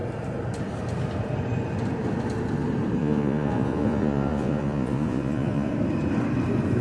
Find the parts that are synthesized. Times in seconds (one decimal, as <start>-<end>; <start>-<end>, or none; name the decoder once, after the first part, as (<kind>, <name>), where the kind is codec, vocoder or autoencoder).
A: 3.0-5.7 (vocoder, Vocos)